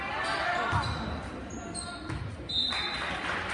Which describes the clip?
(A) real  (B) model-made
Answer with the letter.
A